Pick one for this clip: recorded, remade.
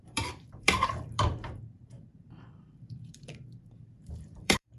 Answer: remade